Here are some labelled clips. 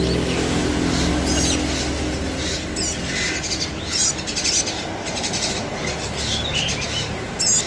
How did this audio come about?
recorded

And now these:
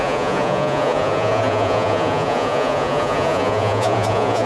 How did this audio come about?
remade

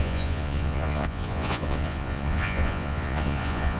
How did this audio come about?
remade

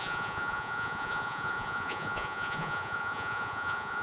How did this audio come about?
remade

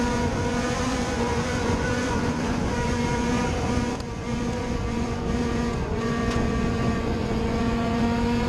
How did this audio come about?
remade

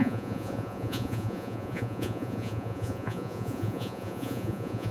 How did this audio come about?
remade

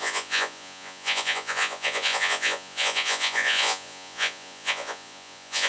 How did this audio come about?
remade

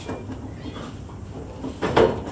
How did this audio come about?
recorded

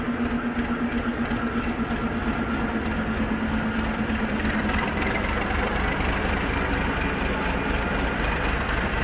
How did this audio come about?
recorded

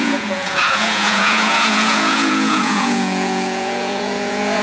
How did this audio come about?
remade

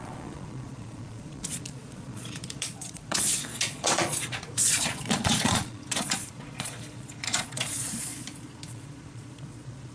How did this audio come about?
remade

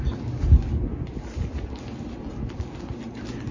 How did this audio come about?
recorded